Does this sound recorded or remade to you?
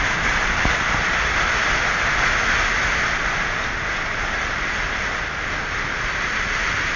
recorded